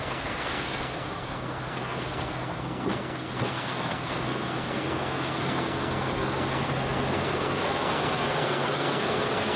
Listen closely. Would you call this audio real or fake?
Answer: fake